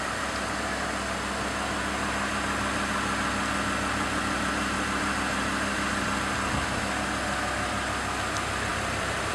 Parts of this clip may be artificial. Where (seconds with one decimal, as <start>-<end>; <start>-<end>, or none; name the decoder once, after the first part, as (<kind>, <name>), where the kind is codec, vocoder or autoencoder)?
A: 8.7-9.3 (vocoder, BigVGAN v2)